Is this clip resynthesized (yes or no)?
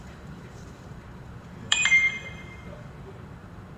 yes